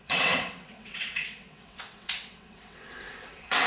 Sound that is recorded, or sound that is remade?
remade